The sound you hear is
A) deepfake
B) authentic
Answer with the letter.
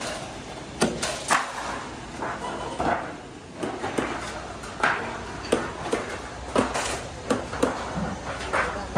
B